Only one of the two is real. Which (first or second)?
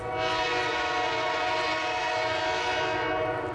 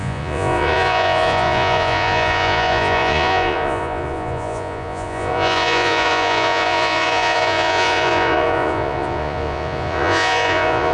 first